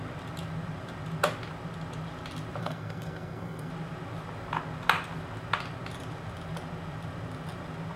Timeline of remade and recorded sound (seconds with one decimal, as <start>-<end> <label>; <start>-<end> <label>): 0.0-2.6 recorded; 2.6-3.7 remade; 3.7-8.0 recorded